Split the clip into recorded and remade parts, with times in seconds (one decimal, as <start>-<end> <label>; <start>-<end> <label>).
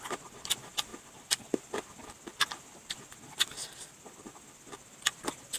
0.0-5.6 recorded